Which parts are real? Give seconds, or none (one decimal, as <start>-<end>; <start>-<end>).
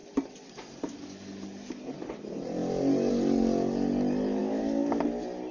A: 0.0-4.4; 5.0-5.5